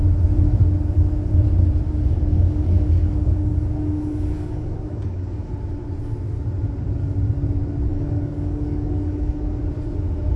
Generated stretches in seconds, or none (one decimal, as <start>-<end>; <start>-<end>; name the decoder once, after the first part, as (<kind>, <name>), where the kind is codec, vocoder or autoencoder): 2.3-5.5 (codec, DAC); 7.9-9.6